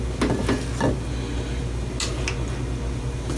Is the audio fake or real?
real